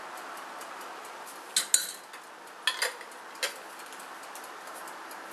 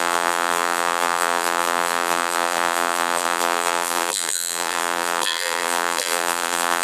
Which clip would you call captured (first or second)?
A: first